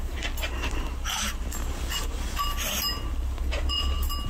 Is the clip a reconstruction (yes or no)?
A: no